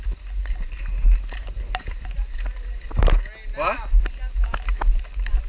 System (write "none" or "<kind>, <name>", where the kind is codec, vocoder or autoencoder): none